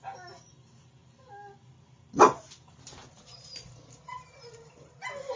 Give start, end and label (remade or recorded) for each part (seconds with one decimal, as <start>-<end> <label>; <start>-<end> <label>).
0.0-3.0 recorded; 3.0-5.0 remade; 5.0-5.4 recorded